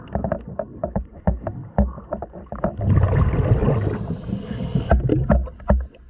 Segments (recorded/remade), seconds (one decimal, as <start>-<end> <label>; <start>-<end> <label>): 0.0-0.8 recorded; 0.8-1.4 remade; 1.4-6.1 recorded

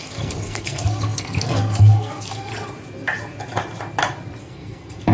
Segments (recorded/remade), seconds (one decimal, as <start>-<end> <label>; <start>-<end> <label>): 0.0-2.5 remade; 2.5-4.4 recorded; 4.4-5.1 remade

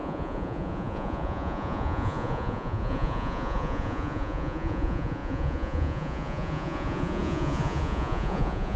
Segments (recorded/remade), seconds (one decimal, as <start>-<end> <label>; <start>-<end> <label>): 0.0-8.8 remade